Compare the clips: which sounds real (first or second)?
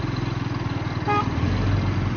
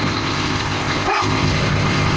first